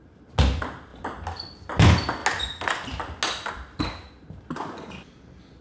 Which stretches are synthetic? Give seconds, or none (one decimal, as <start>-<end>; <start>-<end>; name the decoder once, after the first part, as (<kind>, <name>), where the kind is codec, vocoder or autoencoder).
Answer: none